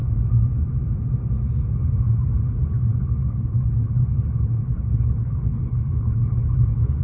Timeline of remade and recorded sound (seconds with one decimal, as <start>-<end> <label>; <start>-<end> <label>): 0.0-2.9 recorded; 2.9-7.0 remade